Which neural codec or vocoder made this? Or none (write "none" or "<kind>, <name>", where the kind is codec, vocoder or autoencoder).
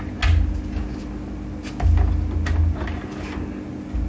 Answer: none